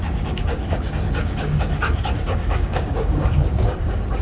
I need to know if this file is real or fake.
fake